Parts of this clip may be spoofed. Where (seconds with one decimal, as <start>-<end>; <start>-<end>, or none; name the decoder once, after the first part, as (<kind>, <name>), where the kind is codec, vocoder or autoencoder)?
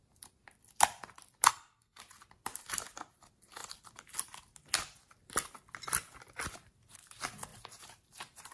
1.5-2.0 (codec, SNAC)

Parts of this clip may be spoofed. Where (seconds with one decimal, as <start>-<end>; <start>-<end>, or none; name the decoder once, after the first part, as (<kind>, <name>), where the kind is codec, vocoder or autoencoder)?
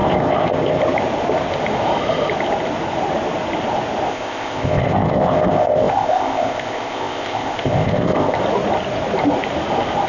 0.0-0.8 (codec, ZipCodec); 4.1-8.4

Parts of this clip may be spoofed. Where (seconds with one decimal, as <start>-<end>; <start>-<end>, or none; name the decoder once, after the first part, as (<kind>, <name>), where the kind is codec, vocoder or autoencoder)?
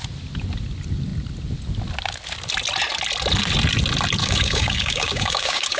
4.2-5.8 (codec, DAC)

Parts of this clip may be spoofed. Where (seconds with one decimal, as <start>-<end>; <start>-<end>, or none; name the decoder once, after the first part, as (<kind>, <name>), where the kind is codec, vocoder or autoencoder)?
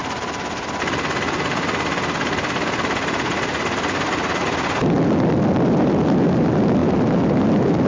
none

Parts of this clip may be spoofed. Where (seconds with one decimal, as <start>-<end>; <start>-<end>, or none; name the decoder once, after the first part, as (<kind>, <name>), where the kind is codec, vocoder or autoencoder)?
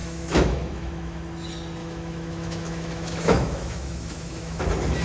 0.0-1.2 (autoencoder, DAC-VAE); 1.8-4.6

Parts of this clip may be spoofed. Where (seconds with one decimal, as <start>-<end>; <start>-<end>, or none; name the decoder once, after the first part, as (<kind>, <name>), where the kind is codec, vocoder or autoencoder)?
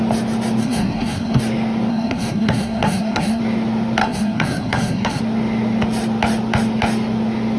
0.6-1.4 (codec, SNAC); 1.9-3.4; 4.0-5.2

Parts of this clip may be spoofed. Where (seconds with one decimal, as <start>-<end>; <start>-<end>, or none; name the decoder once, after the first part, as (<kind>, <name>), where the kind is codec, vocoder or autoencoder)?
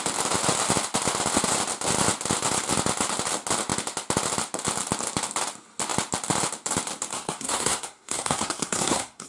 7.1-9.3 (codec, SNAC)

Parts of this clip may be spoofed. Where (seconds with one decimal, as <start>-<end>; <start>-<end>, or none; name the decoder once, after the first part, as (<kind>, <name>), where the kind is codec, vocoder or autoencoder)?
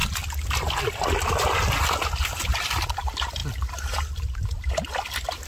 none